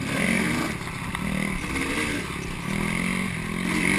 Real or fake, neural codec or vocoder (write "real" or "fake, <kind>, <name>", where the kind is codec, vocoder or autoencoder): real